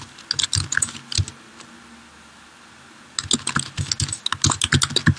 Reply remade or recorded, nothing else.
recorded